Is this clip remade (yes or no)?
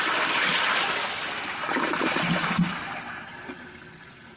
no